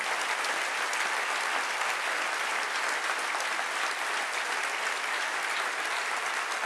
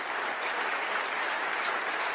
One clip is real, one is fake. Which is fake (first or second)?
second